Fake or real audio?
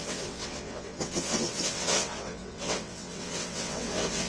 fake